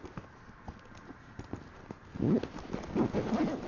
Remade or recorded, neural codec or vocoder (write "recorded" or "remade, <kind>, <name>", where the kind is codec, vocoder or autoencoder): recorded